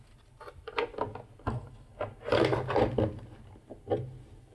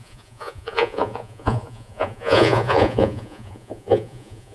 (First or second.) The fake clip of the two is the second